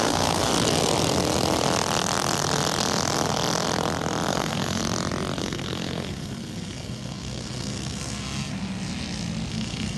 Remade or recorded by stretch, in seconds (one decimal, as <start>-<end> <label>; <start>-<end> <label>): 0.0-0.5 remade; 0.5-4.3 recorded; 4.3-4.8 remade; 4.8-5.4 recorded; 5.4-8.5 remade; 8.5-9.5 recorded; 9.5-10.0 remade